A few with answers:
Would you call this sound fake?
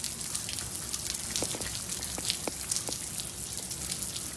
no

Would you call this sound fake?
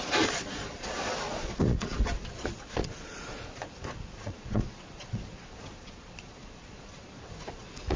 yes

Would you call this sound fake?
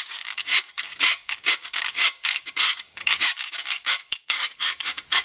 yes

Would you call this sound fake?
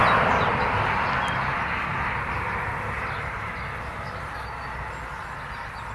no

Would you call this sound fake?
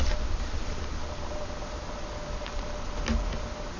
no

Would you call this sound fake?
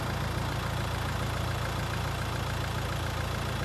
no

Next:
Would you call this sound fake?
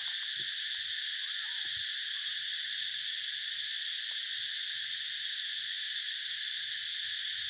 no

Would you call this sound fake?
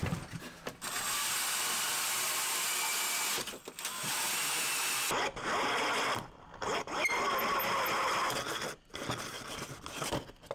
no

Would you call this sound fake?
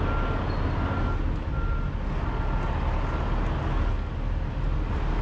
no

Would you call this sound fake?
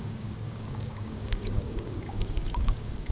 yes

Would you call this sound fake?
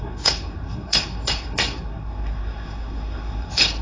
yes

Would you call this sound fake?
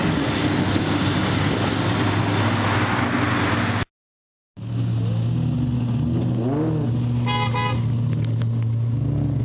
no